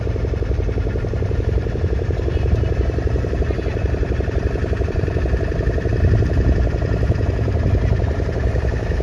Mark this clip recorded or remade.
remade